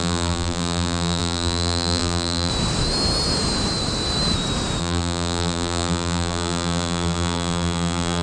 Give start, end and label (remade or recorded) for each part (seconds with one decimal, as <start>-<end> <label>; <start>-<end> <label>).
0.0-2.5 remade; 2.5-4.8 recorded; 4.8-8.2 remade